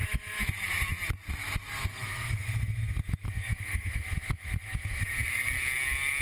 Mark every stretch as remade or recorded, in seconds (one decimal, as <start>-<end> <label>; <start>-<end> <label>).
0.0-0.9 remade; 0.9-1.4 recorded; 1.4-5.1 remade; 5.1-6.2 recorded